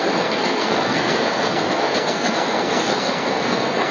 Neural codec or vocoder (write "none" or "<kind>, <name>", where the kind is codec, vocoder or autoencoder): codec, SNAC